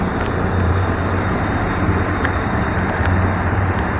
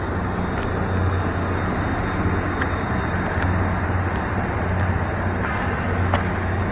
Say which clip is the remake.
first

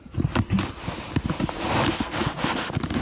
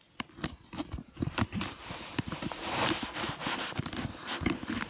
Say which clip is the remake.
second